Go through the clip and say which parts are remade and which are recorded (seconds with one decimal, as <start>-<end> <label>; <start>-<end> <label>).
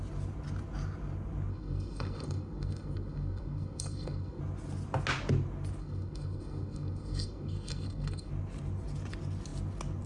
0.0-1.5 recorded; 1.5-4.4 remade; 4.4-5.8 recorded; 5.8-8.3 remade; 8.3-10.1 recorded